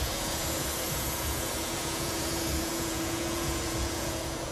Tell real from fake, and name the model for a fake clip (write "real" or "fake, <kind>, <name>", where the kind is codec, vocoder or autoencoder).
fake, vocoder, Vocos